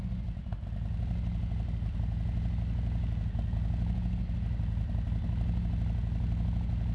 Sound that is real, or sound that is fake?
real